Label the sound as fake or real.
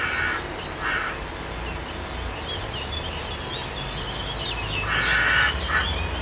real